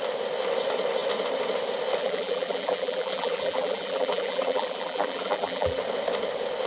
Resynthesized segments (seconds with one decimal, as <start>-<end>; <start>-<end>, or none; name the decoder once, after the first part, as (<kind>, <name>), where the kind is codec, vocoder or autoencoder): 2.0-5.8 (vocoder, BigVGAN v2)